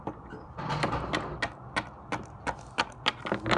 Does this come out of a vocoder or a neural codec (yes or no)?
no